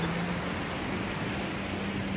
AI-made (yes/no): no